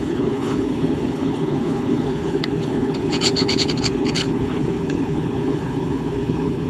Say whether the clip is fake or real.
fake